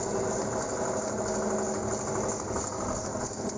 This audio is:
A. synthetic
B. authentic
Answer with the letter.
B